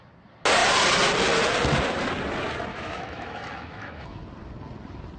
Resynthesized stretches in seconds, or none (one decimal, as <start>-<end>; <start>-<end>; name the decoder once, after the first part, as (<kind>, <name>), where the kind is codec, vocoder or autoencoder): 2.7-4.2 (autoencoder, DAC-VAE)